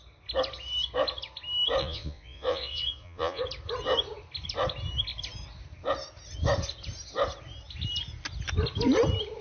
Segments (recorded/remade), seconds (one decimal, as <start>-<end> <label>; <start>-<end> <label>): 0.0-1.8 recorded; 1.8-3.4 remade; 3.4-9.4 recorded